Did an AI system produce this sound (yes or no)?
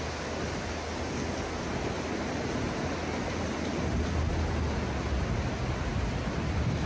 no